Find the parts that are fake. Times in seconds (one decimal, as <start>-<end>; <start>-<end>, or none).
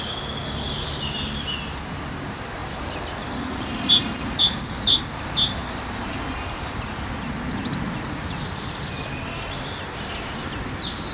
0.4-1.0; 2.6-5.0; 5.6-7.1